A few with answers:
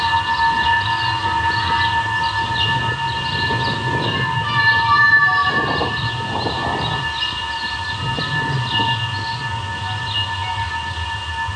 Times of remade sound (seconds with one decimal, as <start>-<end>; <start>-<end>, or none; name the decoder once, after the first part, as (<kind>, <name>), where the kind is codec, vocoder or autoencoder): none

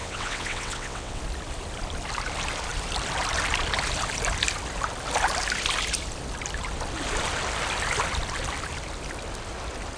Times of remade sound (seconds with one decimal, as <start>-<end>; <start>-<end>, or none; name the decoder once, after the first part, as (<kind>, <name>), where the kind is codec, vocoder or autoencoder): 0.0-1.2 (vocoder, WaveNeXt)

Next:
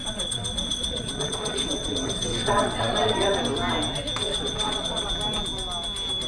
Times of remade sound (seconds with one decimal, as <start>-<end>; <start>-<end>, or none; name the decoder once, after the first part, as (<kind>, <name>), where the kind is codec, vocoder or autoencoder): 0.0-3.4 (vocoder, WaveNeXt); 4.2-5.1

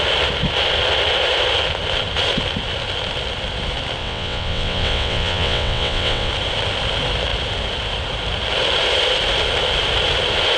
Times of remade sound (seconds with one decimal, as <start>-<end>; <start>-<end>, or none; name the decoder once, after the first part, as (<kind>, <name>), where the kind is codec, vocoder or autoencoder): 4.0-6.3 (vocoder, WaveNeXt)

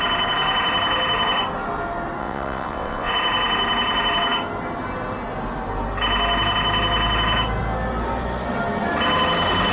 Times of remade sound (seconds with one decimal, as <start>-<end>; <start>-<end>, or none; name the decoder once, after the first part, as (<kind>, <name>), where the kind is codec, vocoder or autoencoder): 2.2-3.1 (vocoder, WaveNeXt)